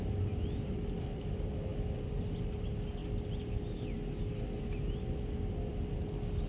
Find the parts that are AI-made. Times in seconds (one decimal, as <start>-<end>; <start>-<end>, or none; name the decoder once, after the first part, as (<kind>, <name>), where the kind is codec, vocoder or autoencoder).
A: none